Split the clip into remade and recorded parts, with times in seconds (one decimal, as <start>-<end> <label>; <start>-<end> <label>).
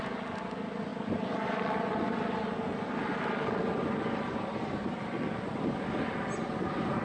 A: 0.0-4.5 recorded; 4.5-6.5 remade; 6.5-7.0 recorded